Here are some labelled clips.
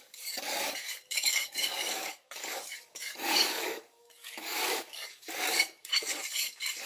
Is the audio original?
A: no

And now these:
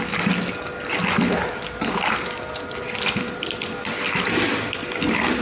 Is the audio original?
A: yes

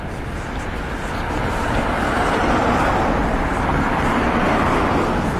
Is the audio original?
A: yes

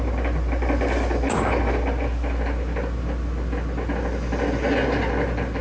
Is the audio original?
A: yes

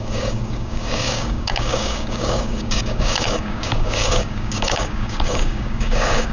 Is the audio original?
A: no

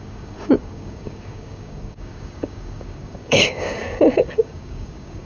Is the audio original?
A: no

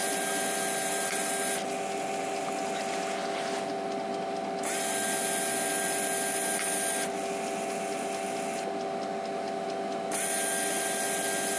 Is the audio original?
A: yes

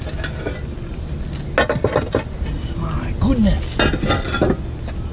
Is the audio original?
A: yes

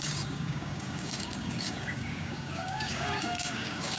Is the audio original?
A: no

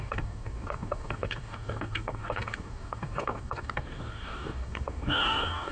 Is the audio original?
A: no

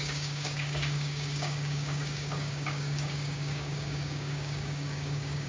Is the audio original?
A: no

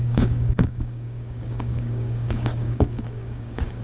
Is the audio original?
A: no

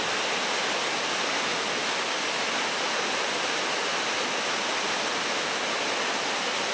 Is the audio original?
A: yes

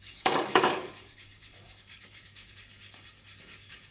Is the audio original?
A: no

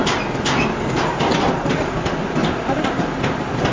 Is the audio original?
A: yes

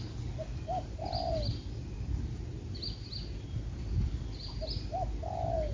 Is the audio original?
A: yes